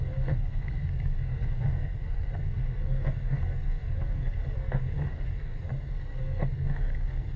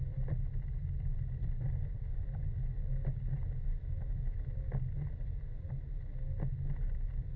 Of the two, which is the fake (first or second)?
first